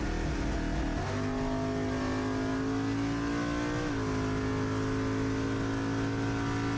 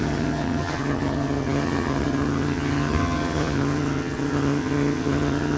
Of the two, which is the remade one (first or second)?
second